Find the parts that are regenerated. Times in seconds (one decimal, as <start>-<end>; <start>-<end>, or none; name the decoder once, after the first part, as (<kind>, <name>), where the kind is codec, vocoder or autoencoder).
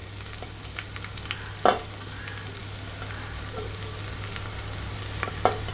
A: none